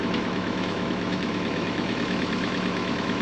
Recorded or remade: remade